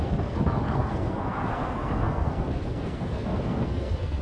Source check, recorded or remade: remade